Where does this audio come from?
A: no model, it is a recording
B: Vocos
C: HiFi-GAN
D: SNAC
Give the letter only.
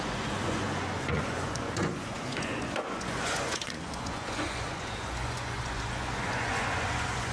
B